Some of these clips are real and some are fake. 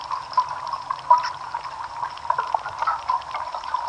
real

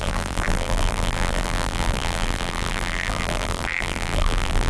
fake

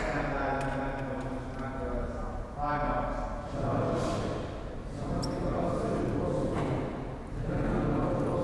real